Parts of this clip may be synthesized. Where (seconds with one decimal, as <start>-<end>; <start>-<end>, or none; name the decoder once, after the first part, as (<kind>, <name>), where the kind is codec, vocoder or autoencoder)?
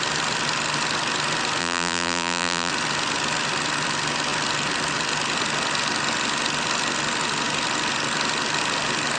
1.6-2.7 (vocoder, BigVGAN v2)